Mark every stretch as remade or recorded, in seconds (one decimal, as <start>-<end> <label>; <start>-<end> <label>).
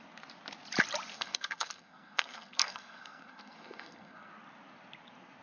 0.0-1.1 recorded; 1.1-4.3 remade; 4.3-5.4 recorded